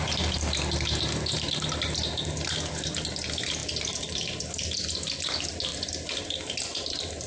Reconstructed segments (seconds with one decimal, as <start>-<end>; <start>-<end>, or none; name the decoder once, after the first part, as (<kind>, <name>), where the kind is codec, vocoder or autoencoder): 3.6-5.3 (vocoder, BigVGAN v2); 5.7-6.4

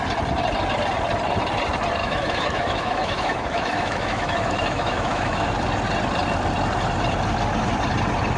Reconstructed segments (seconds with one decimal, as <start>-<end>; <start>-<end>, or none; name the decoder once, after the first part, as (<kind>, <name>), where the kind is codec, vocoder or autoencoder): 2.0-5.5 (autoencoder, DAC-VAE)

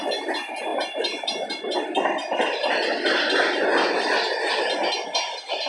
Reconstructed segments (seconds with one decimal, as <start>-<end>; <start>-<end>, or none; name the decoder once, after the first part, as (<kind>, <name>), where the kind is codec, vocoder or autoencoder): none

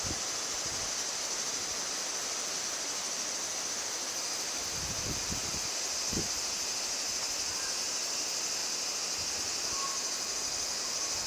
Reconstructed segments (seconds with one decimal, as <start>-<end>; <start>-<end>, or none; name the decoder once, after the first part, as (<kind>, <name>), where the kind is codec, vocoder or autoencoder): none